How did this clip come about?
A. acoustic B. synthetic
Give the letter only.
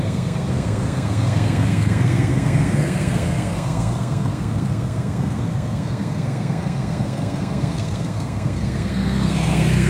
B